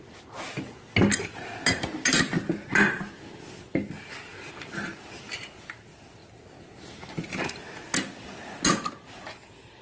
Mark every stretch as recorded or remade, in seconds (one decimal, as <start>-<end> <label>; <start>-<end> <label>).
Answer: 0.0-9.8 recorded